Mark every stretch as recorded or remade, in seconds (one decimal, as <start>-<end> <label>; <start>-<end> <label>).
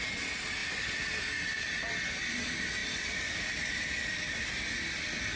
0.0-0.6 recorded; 0.6-1.2 remade; 1.2-2.8 recorded; 2.8-4.5 remade; 4.5-5.4 recorded